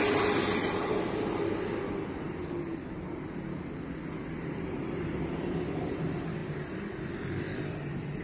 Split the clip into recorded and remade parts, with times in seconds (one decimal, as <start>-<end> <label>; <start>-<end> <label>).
0.0-8.2 recorded